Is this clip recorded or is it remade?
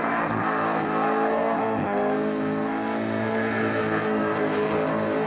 remade